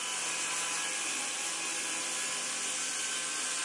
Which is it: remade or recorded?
recorded